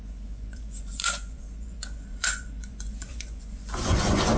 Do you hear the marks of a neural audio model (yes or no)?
yes